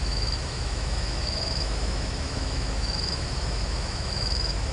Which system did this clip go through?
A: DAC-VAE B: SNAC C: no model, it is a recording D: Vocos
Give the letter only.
A